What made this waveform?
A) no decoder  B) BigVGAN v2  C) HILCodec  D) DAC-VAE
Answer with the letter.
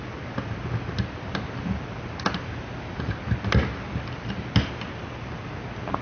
A